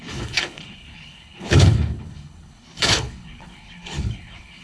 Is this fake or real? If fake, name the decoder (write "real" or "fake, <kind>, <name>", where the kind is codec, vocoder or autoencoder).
fake, codec, HILCodec